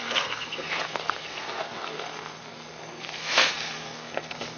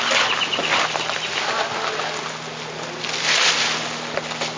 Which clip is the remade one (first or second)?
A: first